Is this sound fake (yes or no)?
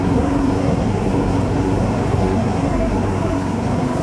yes